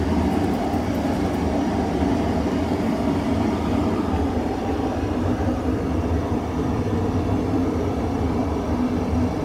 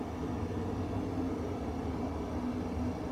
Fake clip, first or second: first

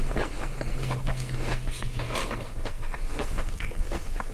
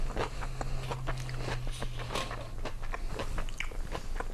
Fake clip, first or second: first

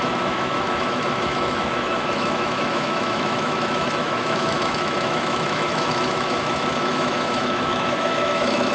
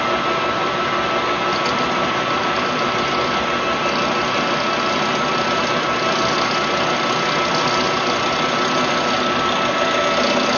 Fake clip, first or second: first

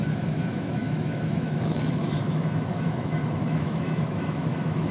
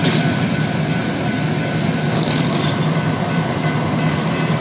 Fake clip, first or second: first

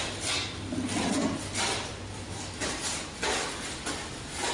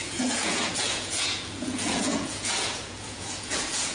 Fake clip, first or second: second